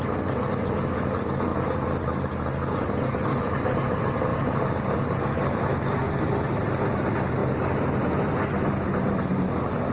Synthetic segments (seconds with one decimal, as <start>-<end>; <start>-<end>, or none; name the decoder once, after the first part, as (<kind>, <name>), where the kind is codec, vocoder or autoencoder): none